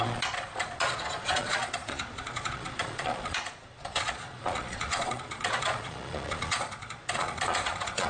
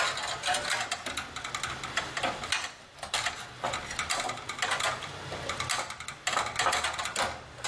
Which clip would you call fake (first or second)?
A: first